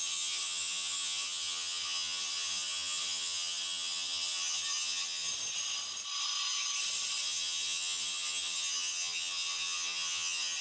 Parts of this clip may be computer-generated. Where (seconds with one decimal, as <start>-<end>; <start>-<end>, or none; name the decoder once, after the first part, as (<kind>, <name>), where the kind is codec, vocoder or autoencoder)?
0.0-5.3 (vocoder, HiFi-GAN); 7.2-10.6